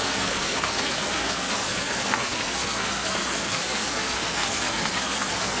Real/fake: fake